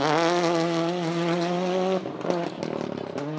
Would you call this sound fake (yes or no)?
no